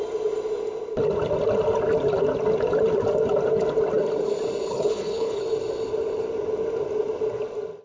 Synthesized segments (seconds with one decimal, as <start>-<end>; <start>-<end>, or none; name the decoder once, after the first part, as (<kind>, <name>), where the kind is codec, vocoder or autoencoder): 4.7-5.4 (codec, HILCodec)